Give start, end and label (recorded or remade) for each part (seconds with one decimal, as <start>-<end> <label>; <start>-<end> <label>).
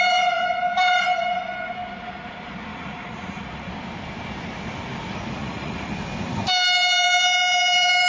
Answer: 0.0-2.7 recorded; 2.7-3.7 remade; 3.7-5.4 recorded; 5.4-5.9 remade; 5.9-8.1 recorded